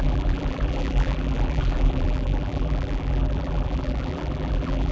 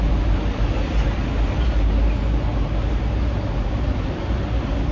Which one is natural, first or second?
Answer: second